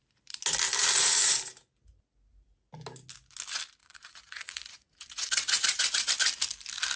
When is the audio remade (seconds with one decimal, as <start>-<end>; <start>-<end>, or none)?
3.8-6.1